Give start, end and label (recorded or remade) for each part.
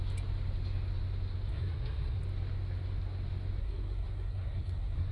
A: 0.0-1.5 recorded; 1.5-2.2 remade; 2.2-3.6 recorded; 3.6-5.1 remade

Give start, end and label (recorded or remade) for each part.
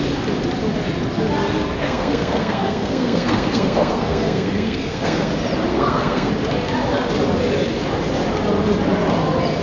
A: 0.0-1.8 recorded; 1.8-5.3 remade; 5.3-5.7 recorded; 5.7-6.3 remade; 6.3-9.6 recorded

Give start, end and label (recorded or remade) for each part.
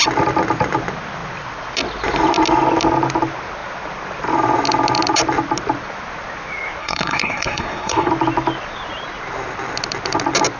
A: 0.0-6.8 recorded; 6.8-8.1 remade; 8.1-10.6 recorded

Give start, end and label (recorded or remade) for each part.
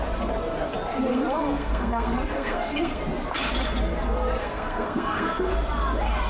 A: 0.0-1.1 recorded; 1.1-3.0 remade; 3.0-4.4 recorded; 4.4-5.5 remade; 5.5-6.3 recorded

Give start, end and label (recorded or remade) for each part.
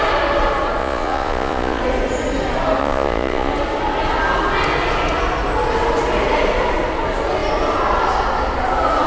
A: 0.0-0.8 recorded; 0.8-1.8 remade; 1.8-2.8 recorded; 2.8-3.5 remade; 3.5-9.1 recorded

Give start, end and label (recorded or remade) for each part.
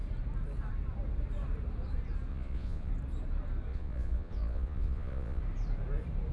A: 0.0-2.3 recorded; 2.3-2.9 remade; 2.9-3.7 recorded; 3.7-5.4 remade; 5.4-6.3 recorded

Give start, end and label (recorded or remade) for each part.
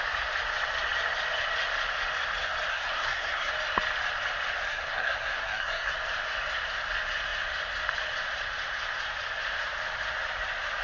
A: 0.0-2.7 recorded; 2.7-3.5 remade; 3.5-4.7 recorded; 4.7-5.9 remade; 5.9-10.8 recorded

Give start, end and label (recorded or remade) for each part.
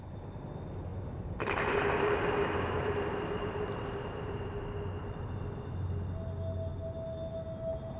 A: 0.0-0.9 recorded; 0.9-4.5 remade; 4.5-8.0 recorded